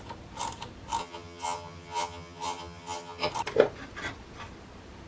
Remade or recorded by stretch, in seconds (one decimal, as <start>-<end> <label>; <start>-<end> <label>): 0.0-1.0 recorded; 1.0-3.3 remade; 3.3-5.1 recorded